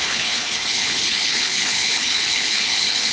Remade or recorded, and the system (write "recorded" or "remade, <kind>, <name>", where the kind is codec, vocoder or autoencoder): remade, codec, HILCodec